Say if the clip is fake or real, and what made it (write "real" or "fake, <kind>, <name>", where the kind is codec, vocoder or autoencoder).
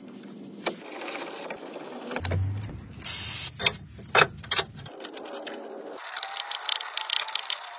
real